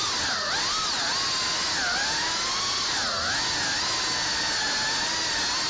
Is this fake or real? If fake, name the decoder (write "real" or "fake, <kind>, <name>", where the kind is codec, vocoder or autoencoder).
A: real